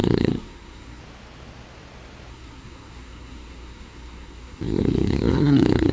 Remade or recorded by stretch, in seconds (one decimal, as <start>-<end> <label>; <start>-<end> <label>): 0.0-1.0 remade; 1.0-2.3 recorded; 2.3-5.9 remade